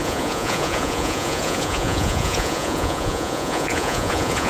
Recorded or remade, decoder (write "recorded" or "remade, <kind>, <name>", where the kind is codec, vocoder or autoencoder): remade, vocoder, Vocos